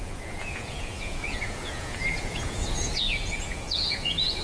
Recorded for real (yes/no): no